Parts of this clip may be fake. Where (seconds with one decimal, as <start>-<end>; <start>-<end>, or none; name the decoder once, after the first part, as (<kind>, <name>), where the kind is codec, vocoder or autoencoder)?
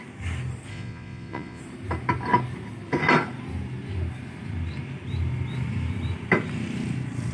0.7-1.6 (vocoder, Vocos)